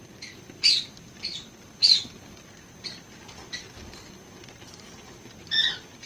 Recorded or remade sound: recorded